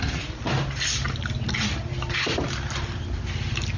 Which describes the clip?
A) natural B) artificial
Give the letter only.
A